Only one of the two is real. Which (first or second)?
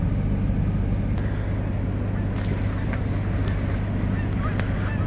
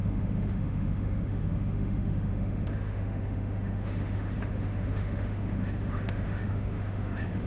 first